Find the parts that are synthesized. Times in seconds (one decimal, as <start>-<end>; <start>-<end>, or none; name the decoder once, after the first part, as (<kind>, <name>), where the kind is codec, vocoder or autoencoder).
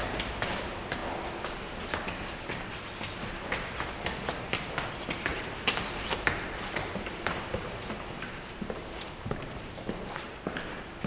5.3-10.4 (vocoder, BigVGAN v2)